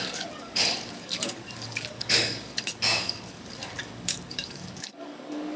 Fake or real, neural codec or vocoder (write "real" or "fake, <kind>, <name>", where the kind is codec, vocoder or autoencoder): fake, codec, DAC